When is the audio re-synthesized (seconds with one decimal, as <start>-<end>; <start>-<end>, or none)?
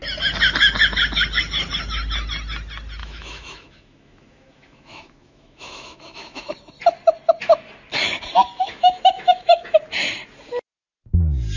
3.0-6.5; 8.7-9.7